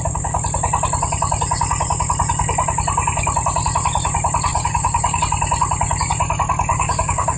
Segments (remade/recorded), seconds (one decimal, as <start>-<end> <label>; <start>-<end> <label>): 0.0-4.5 recorded; 4.5-5.2 remade; 5.2-6.7 recorded; 6.7-7.4 remade